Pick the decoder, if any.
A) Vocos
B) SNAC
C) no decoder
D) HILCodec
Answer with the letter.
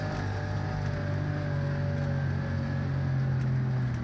C